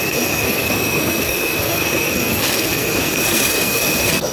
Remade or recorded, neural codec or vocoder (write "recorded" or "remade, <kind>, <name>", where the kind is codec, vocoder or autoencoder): remade, codec, SNAC